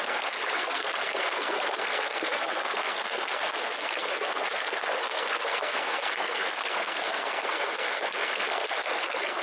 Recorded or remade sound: remade